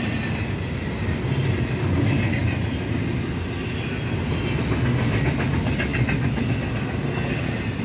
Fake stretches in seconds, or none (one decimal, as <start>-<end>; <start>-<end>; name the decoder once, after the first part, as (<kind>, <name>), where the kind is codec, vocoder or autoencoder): none